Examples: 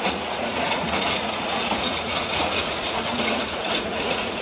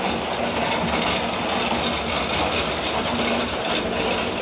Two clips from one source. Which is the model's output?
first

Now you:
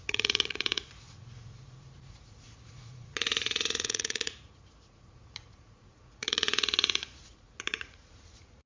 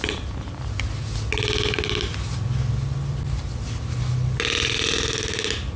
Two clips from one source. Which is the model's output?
first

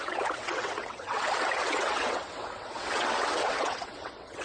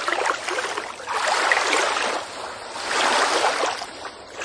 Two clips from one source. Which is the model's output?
first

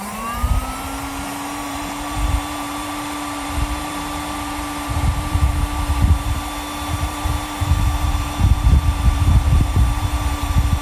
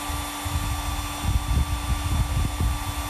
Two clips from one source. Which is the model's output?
first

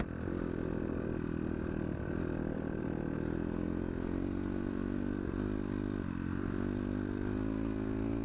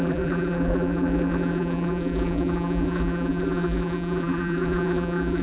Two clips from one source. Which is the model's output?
second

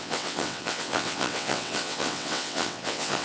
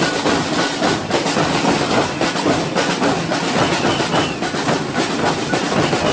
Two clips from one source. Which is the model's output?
first